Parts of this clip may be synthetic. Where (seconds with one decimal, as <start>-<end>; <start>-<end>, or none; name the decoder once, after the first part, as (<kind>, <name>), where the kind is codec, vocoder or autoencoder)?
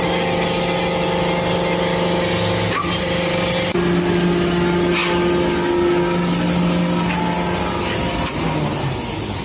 none